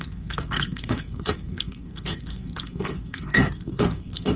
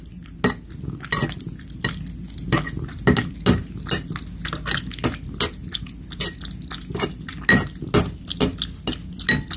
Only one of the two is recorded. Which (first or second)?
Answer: second